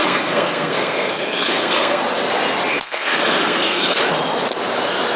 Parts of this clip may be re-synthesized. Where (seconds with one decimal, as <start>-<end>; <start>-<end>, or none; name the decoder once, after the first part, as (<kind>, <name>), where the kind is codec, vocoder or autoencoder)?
0.0-2.0 (codec, SNAC); 2.7-4.0